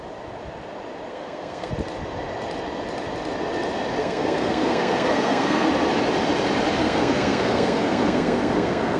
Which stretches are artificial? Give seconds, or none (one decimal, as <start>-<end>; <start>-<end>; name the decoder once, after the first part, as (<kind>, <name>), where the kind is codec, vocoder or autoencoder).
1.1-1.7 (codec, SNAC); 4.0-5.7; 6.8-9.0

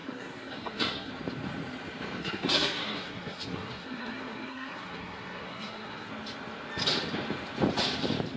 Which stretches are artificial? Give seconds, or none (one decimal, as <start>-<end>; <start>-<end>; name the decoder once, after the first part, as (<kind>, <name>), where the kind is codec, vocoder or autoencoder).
0.0-1.1 (codec, SNAC); 2.2-6.1

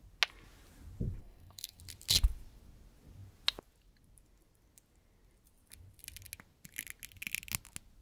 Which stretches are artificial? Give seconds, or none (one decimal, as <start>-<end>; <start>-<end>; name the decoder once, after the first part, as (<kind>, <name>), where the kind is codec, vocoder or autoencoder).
1.2-1.8 (codec, SNAC)